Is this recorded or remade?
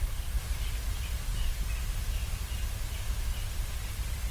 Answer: recorded